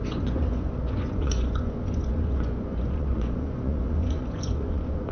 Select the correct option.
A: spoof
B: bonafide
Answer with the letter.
A